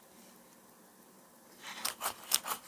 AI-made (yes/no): no